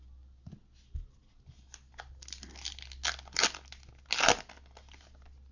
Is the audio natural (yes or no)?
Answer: yes